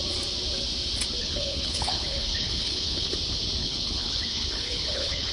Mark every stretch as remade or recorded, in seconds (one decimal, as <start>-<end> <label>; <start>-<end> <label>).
0.0-1.2 recorded; 1.2-3.1 remade; 3.1-3.6 recorded; 3.6-5.3 remade